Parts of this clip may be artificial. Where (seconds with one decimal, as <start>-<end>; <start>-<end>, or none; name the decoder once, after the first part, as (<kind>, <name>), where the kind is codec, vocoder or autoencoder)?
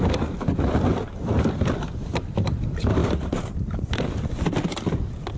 3.0-3.8 (vocoder, BigVGAN v2)